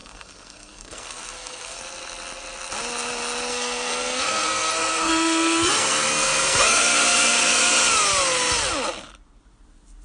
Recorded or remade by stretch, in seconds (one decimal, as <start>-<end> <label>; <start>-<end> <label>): 0.0-1.8 remade; 1.8-3.5 recorded; 3.5-7.7 remade; 7.7-10.0 recorded